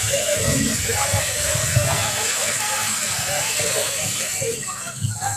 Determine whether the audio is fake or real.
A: fake